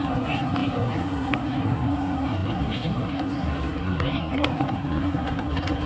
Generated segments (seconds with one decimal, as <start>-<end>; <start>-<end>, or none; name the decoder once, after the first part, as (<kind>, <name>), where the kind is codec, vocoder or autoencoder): 0.0-5.9 (codec, SNAC)